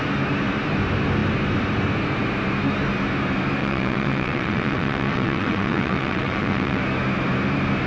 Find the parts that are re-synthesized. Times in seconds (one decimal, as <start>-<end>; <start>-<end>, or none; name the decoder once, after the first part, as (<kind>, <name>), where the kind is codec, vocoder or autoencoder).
3.6-6.8 (vocoder, WaveNeXt)